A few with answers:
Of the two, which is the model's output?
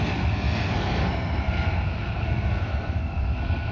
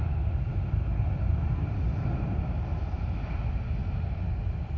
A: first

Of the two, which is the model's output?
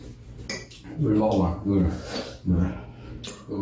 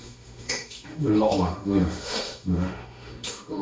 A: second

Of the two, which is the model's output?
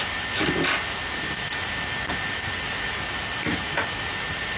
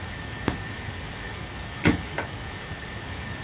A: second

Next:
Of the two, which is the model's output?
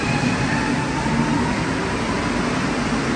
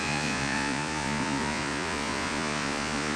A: second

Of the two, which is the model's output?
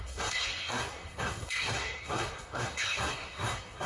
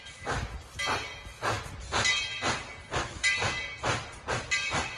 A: first